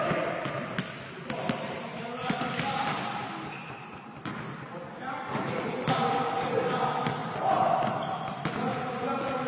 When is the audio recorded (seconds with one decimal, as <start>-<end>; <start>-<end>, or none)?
0.0-9.5